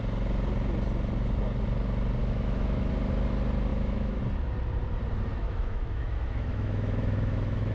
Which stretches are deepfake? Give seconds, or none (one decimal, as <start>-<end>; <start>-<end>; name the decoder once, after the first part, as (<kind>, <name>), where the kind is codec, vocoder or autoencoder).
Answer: 2.2-2.9 (autoencoder, DAC-VAE); 3.7-4.2; 5.3-7.7